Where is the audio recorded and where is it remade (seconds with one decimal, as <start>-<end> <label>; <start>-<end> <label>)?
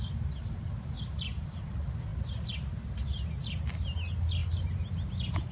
0.0-5.5 recorded